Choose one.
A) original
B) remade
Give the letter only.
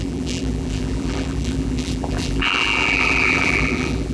B